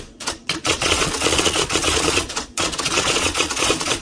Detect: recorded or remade remade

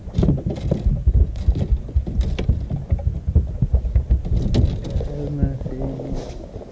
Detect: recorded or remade recorded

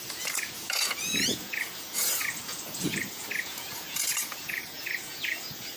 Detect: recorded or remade remade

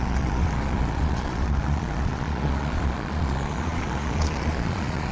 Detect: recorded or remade remade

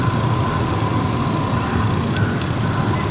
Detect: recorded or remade recorded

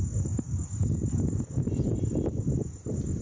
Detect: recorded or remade recorded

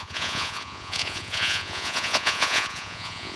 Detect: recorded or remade remade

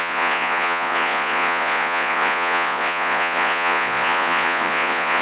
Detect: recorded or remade remade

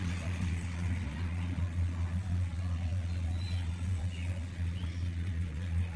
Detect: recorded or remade remade